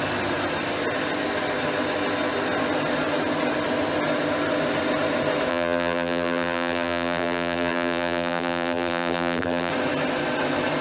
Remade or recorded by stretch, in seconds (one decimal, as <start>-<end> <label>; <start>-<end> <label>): 0.0-5.5 recorded; 5.5-9.7 remade; 9.7-10.8 recorded